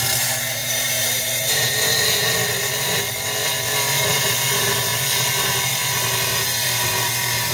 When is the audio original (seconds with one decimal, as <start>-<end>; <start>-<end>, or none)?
0.0-0.6; 3.0-6.3